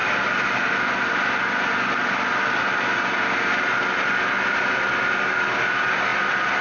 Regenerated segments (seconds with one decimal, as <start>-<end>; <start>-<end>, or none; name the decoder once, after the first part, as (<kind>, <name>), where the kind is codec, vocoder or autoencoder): none